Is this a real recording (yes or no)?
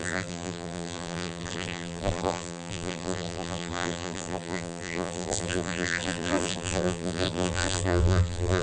no